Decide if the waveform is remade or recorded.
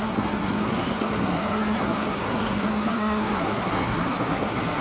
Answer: remade